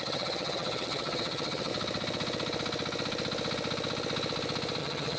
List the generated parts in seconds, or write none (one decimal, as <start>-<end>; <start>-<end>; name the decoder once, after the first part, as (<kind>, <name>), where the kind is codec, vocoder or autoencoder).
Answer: 0.0-1.7 (vocoder, HiFi-GAN); 4.8-5.2